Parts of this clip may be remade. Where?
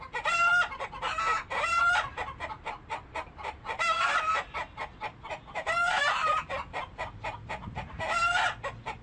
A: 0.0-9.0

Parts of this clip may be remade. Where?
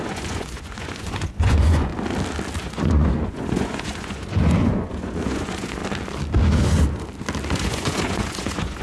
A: 0.0-1.9; 2.6-5.8; 7.5-8.8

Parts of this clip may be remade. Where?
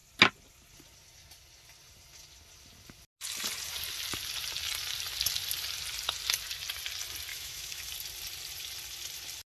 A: 7.3-7.9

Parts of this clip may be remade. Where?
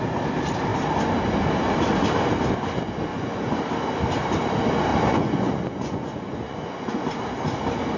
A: 3.1-3.6; 4.9-6.9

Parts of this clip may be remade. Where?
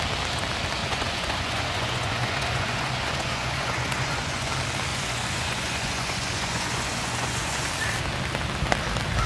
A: 0.8-4.5; 4.9-7.7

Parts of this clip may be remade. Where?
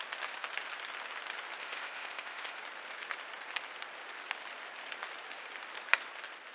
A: 1.6-2.6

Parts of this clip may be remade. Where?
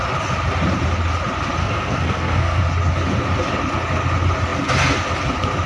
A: 1.6-2.6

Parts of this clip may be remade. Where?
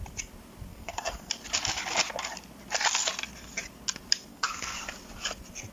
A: 0.7-1.3; 4.3-4.8